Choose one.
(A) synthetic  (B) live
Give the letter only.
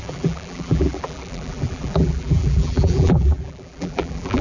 A